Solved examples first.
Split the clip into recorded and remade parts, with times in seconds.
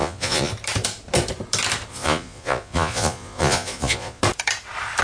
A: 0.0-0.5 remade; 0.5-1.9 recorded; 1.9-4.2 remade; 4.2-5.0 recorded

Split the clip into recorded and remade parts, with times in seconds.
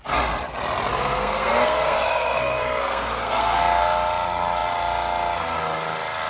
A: 0.0-0.9 recorded; 0.9-3.6 remade; 3.6-6.3 recorded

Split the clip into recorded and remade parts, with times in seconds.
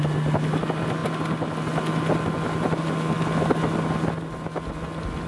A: 0.0-5.3 recorded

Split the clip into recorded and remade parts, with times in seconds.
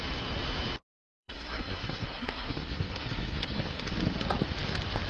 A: 0.0-1.0 recorded; 1.0-3.9 remade; 3.9-5.1 recorded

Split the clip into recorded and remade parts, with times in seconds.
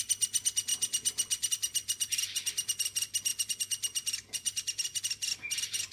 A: 0.0-0.7 remade; 0.7-1.5 recorded; 1.5-5.9 remade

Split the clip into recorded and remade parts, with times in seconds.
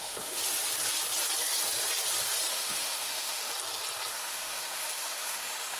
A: 0.0-0.4 remade; 0.4-2.5 recorded; 2.5-3.5 remade; 3.5-4.1 recorded; 4.1-5.8 remade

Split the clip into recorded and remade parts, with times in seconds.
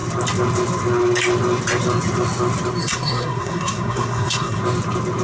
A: 0.0-2.8 recorded; 2.8-4.6 remade; 4.6-5.2 recorded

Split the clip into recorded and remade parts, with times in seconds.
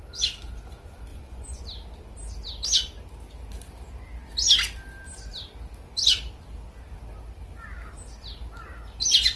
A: 0.0-1.1 recorded; 1.1-1.6 remade; 1.6-9.4 recorded